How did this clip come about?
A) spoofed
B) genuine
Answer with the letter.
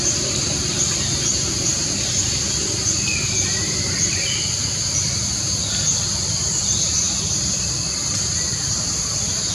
B